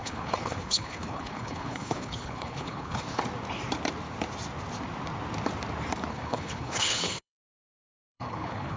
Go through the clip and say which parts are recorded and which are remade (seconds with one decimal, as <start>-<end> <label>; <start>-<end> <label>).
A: 0.0-3.2 remade; 3.2-6.1 recorded; 6.1-8.8 remade